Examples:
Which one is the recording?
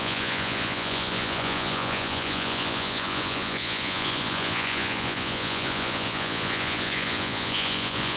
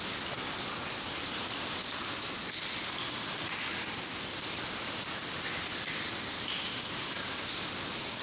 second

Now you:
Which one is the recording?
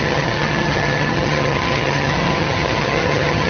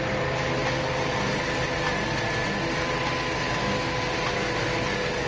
second